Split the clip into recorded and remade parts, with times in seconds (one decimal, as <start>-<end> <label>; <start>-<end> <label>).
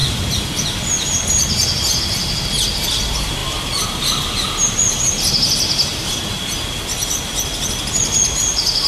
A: 0.0-5.9 recorded; 5.9-6.4 remade; 6.4-8.9 recorded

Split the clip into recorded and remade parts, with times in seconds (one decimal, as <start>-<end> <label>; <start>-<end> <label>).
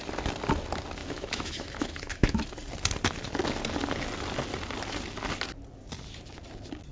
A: 0.0-1.0 recorded; 1.0-2.4 remade; 2.4-6.9 recorded